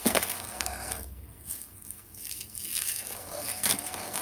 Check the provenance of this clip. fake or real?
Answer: fake